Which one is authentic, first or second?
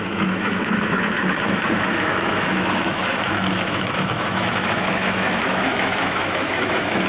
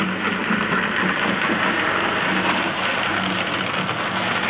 second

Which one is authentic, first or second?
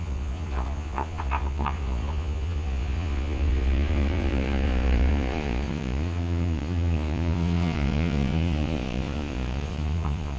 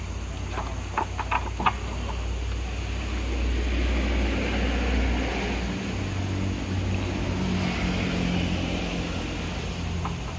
second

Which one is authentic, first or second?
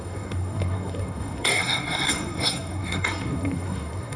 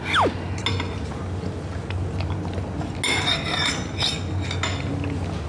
second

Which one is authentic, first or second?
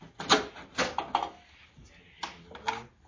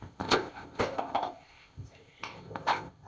first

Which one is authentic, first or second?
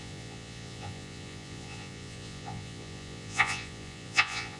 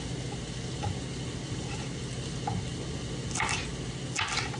second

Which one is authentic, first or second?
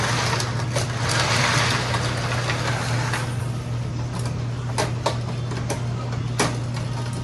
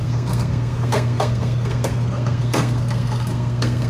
first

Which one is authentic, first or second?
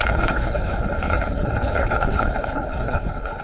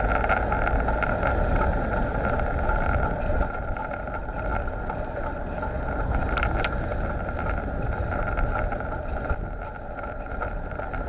second